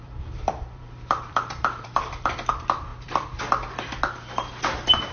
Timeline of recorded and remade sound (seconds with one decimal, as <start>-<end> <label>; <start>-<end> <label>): 0.0-2.5 remade; 2.5-2.9 recorded; 2.9-4.0 remade; 4.0-5.1 recorded